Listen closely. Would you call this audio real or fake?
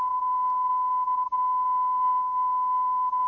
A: real